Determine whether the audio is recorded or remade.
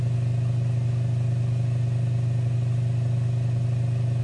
recorded